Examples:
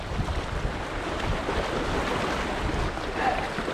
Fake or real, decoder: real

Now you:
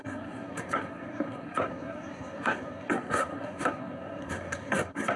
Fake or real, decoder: fake, codec, SNAC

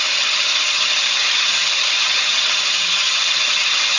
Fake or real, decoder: fake, vocoder, HiFi-GAN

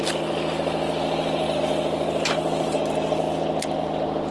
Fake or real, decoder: real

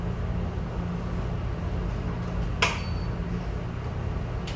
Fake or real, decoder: real